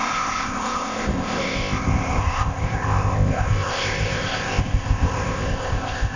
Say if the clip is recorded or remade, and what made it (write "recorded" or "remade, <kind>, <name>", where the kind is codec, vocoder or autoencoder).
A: remade, codec, ZipCodec